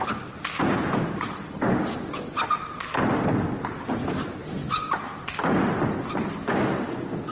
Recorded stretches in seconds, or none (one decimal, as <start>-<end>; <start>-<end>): 0.0-7.3